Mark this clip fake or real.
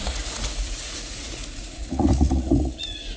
fake